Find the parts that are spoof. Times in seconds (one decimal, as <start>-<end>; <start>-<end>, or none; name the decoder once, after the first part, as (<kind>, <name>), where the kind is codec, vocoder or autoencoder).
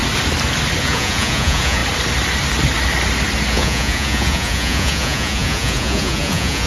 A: 0.8-1.8 (vocoder, Vocos); 3.5-6.7